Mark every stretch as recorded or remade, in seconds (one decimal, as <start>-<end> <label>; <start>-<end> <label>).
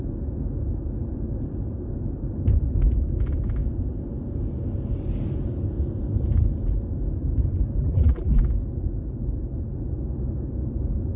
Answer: 0.0-7.8 recorded; 7.8-8.4 remade; 8.4-11.2 recorded